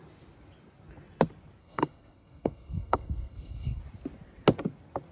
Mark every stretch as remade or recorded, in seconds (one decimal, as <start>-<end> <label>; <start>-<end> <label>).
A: 0.0-1.6 recorded; 1.6-3.8 remade; 3.8-5.1 recorded